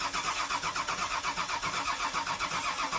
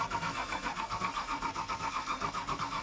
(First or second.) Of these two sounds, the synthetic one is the second